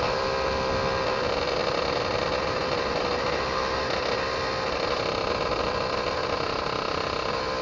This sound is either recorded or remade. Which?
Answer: recorded